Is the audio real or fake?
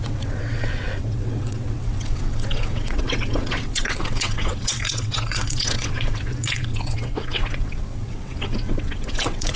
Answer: fake